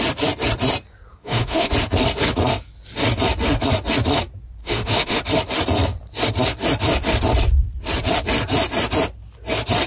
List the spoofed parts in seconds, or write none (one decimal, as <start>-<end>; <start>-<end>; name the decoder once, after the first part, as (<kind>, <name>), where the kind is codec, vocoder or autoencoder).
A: 1.2-1.7 (autoencoder, DAC-VAE); 4.6-5.2